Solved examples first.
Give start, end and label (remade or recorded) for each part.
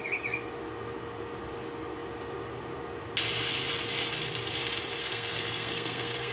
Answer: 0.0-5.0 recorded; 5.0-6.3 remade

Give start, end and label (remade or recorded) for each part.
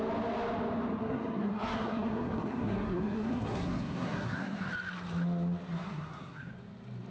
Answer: 0.0-1.0 recorded; 1.0-4.7 remade; 4.7-5.7 recorded; 5.7-6.5 remade; 6.5-7.1 recorded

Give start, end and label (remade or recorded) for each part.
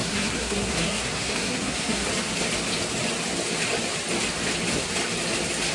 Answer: 0.0-2.1 remade; 2.1-5.7 recorded